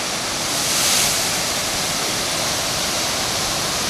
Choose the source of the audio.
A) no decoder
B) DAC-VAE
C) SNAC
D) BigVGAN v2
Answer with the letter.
A